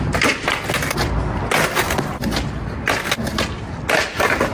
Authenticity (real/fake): real